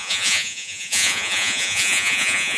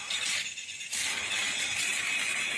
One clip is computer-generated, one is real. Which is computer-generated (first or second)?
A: first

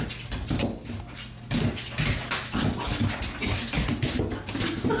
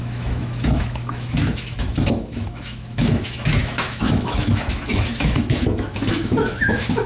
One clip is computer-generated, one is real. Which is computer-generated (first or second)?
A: second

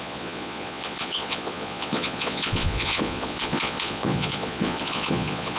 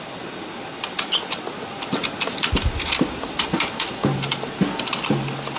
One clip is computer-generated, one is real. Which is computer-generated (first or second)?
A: first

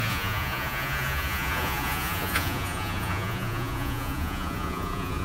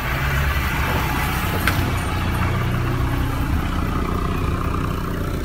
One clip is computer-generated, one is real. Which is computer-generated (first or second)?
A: first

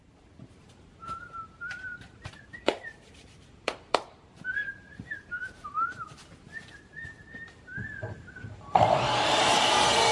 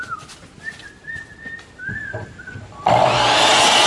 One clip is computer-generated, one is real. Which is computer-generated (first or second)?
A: first